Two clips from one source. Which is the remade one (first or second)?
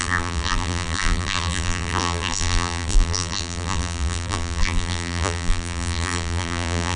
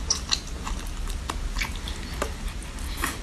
first